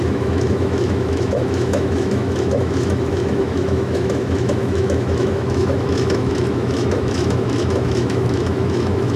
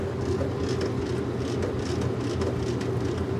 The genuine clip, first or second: second